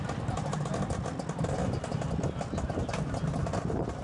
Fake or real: real